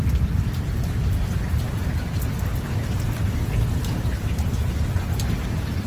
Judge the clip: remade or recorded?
recorded